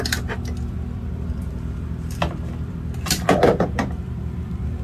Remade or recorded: remade